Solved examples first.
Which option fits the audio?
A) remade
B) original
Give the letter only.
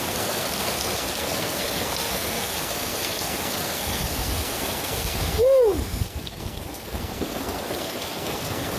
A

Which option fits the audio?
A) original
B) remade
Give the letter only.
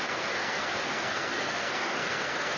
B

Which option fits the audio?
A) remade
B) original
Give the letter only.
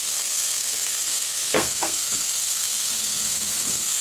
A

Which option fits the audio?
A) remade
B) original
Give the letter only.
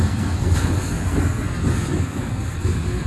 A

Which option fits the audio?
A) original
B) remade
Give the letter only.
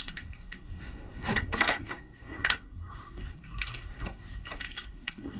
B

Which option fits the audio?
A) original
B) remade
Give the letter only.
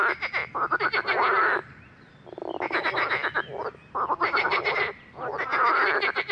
A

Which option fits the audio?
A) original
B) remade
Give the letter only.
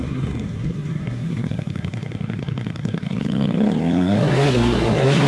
B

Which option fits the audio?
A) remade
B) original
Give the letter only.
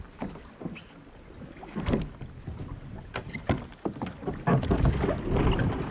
B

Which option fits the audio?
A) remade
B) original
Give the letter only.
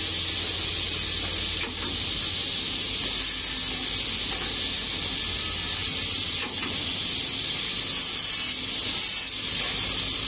B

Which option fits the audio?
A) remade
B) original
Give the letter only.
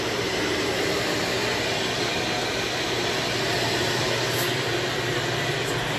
B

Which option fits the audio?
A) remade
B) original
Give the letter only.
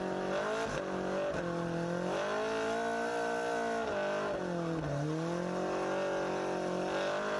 B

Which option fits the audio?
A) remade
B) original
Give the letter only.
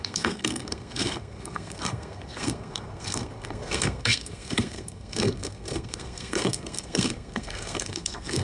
A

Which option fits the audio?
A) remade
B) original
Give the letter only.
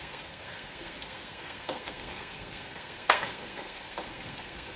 A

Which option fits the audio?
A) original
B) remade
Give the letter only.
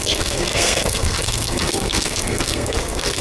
B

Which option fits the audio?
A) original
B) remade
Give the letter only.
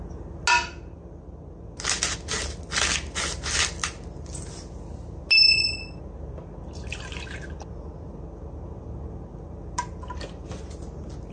A